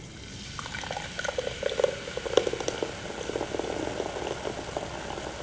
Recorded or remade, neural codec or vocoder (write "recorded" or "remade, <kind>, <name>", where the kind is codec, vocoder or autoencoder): recorded